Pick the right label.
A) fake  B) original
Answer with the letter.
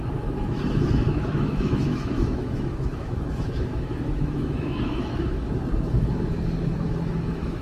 A